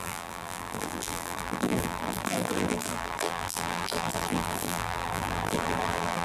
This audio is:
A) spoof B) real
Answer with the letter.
A